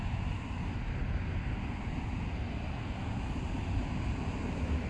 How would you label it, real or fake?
real